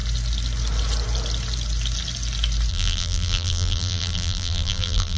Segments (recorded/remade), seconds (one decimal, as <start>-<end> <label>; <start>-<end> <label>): 0.0-2.7 recorded; 2.7-5.2 remade